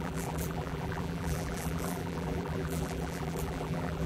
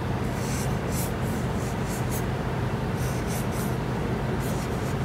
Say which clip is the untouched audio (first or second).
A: second